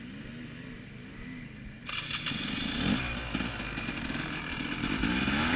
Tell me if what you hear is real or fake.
real